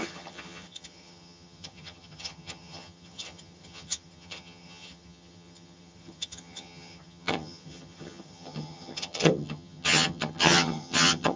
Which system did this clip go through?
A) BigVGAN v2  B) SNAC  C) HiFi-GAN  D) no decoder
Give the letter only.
C